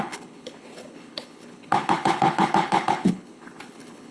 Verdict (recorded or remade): remade